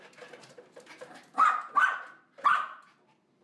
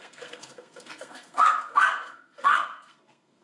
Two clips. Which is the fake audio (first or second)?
second